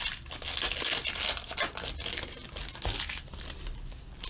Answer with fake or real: real